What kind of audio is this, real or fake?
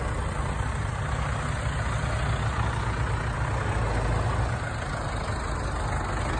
real